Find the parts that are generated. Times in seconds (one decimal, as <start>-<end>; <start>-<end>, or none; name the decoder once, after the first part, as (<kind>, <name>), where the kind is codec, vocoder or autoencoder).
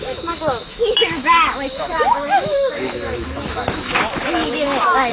0.0-5.1 (autoencoder, DAC-VAE)